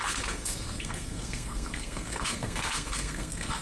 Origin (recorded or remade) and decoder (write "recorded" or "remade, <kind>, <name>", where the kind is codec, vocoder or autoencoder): remade, codec, SNAC